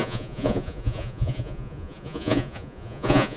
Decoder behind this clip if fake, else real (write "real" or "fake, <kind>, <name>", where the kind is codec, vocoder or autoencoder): fake, vocoder, Vocos